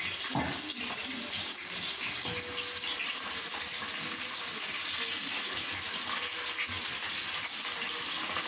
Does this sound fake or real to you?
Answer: real